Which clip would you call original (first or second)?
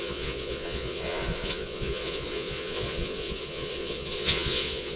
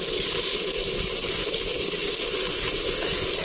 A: second